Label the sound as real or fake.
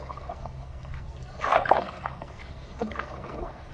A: fake